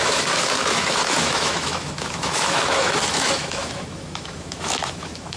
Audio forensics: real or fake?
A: fake